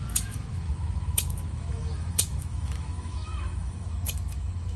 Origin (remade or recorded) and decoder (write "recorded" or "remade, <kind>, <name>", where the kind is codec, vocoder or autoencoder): remade, autoencoder, DAC-VAE